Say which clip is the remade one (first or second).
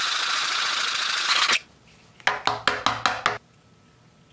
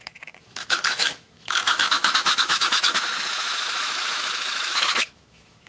second